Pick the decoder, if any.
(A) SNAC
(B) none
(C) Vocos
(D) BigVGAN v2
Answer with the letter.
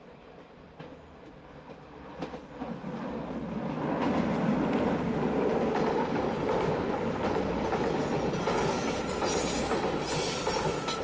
B